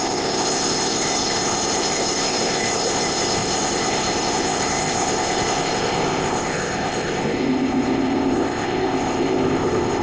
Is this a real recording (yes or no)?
no